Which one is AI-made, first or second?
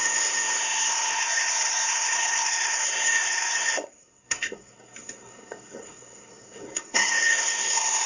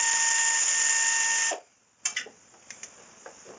first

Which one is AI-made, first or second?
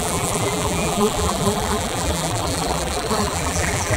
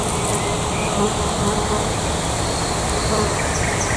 first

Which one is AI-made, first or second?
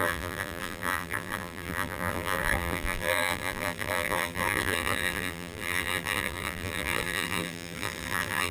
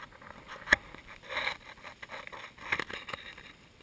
first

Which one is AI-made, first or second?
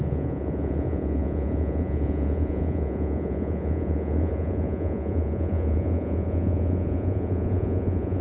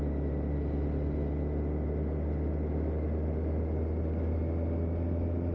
first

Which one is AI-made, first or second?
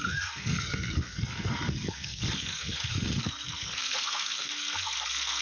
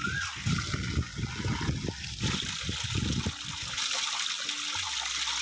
first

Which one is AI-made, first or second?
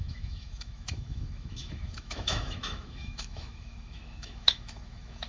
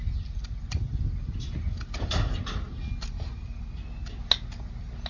first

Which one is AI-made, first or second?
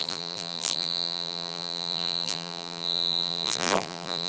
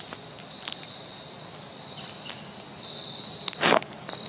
first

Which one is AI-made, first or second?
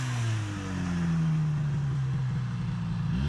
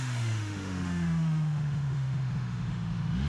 second